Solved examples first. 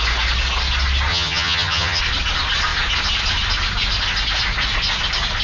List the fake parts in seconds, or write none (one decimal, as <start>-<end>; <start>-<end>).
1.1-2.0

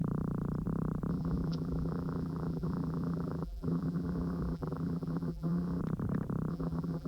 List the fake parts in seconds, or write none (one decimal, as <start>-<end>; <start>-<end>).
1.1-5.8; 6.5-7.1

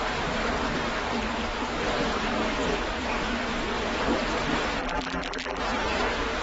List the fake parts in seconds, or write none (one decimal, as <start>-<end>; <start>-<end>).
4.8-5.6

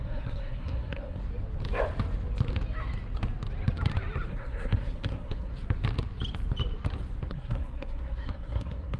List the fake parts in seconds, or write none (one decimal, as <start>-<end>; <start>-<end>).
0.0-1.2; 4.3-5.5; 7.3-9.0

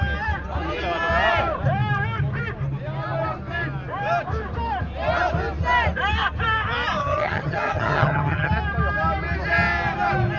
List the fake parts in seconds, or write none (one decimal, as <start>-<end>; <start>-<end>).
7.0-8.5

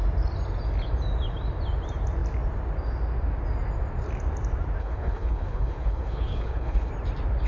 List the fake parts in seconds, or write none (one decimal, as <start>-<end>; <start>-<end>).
4.8-6.9

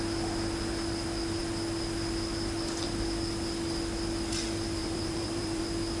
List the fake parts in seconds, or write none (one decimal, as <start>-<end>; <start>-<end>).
4.8-5.6